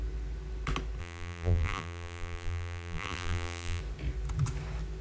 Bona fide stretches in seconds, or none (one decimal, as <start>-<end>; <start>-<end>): 0.0-1.0; 3.8-5.0